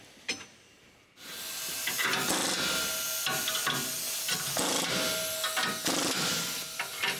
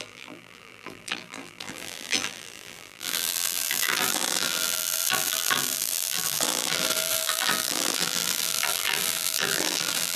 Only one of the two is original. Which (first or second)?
first